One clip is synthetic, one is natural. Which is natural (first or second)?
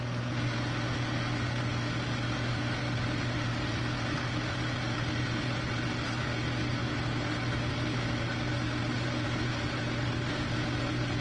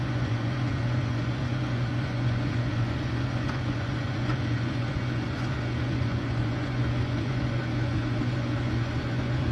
first